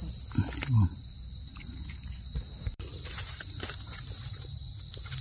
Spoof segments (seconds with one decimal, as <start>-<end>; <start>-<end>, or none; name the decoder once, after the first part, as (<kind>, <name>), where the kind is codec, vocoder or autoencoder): 1.5-4.6 (vocoder, BigVGAN v2)